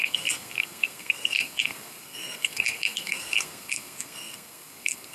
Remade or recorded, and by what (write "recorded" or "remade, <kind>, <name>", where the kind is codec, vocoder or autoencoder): remade, codec, SNAC